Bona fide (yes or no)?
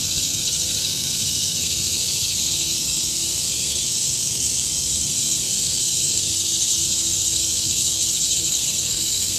no